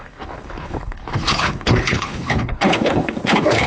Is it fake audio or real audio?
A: fake